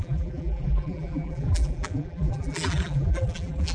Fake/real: fake